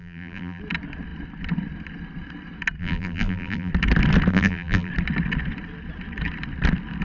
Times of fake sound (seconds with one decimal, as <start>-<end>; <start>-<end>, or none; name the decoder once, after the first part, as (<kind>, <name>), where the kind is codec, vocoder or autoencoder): 0.0-0.6 (vocoder, BigVGAN v2); 2.8-3.7; 4.3-4.9